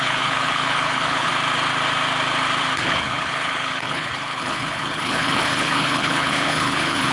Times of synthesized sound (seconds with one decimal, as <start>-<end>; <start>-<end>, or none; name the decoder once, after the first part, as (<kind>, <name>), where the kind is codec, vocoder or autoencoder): 0.0-1.3 (codec, HILCodec); 2.6-7.1